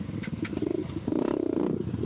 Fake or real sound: real